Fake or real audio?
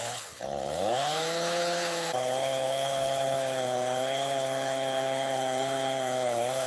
fake